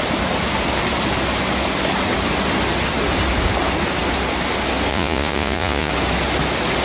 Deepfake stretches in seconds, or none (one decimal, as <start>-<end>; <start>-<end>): 4.9-5.9